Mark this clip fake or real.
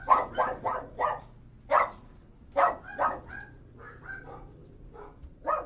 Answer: real